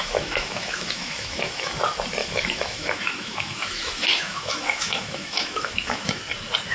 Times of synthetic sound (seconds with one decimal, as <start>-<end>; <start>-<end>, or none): 0.0-1.7; 2.2-6.2

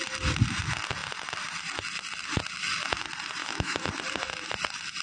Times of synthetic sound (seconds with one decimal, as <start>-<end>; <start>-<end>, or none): 3.4-3.9

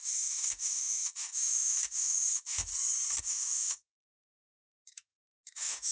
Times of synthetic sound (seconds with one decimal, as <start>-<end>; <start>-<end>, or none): 0.0-2.7; 3.2-5.9

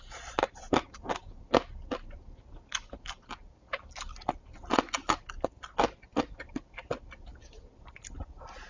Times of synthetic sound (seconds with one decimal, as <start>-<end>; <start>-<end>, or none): none

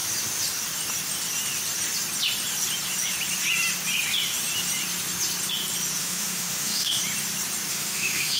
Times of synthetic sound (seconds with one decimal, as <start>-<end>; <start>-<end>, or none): 6.0-7.0; 7.7-8.4